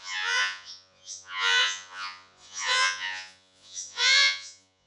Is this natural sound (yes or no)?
no